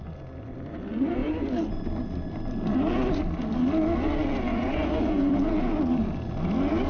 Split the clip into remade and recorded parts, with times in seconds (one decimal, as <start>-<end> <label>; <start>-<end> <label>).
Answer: 0.0-4.5 recorded; 4.5-5.3 remade; 5.3-6.9 recorded